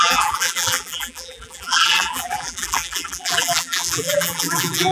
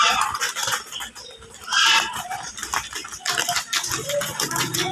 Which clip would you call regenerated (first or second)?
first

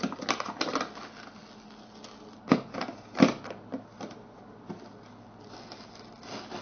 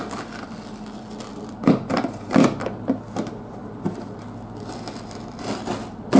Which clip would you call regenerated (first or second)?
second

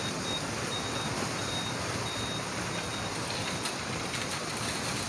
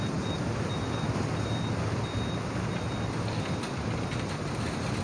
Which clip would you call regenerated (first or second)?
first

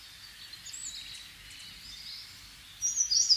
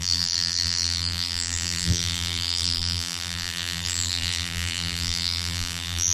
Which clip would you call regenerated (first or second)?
second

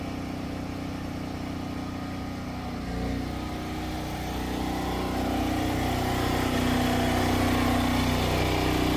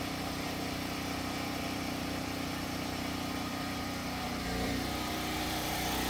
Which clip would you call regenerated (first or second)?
second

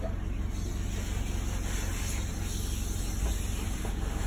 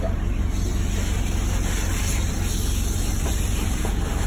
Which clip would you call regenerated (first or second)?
second